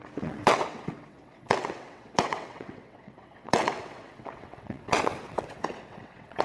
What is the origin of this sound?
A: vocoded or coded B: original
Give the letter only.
A